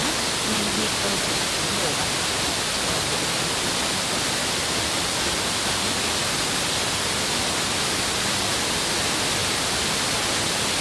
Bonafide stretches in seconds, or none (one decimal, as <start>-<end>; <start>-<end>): 0.0-9.4; 10.3-10.8